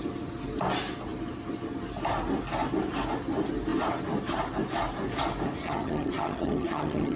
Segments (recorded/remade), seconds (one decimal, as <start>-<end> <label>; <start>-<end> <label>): 0.0-5.6 recorded; 5.6-7.2 remade